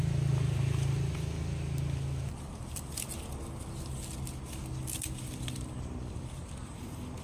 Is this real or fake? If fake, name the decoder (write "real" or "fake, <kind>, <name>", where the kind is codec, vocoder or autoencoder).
real